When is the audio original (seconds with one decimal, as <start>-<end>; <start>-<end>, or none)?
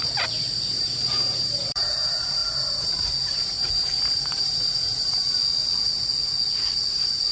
5.4-7.3